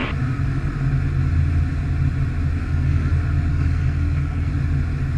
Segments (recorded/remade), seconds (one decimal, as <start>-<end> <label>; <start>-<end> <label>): 0.0-2.6 recorded; 2.6-3.1 remade; 3.1-3.5 recorded; 3.5-4.5 remade; 4.5-5.2 recorded